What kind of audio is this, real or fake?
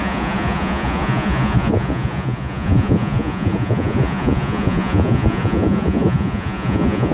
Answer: fake